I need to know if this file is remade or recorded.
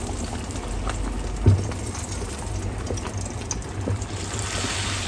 recorded